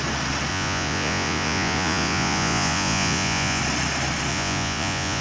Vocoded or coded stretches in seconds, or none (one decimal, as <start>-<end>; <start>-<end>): 0.5-3.6; 4.3-5.2